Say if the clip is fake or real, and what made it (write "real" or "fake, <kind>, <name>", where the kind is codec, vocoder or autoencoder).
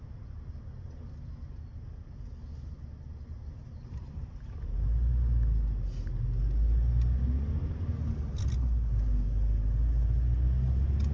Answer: real